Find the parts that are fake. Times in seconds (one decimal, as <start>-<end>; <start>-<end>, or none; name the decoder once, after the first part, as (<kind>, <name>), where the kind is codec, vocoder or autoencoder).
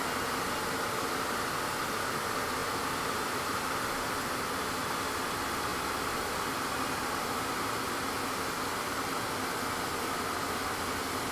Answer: none